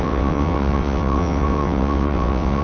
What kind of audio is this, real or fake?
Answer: fake